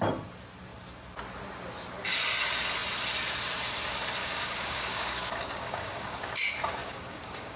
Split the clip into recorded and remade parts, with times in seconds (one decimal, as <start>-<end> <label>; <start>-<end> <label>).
0.0-4.2 recorded; 4.2-6.3 remade; 6.3-6.8 recorded; 6.8-7.6 remade